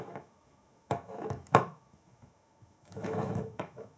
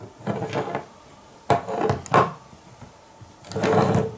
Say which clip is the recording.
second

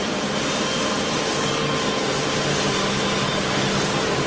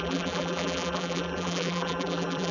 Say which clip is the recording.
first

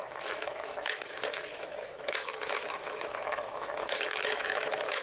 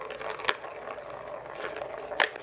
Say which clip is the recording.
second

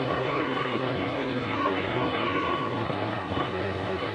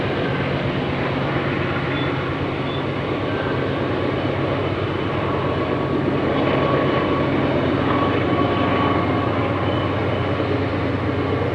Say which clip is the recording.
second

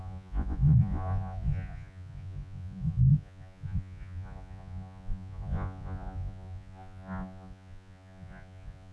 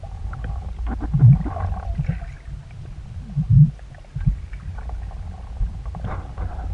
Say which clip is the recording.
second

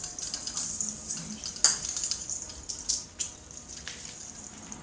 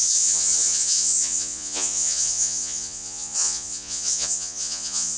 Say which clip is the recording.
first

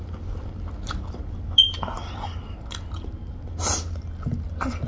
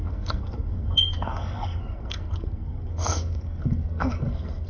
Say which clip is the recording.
first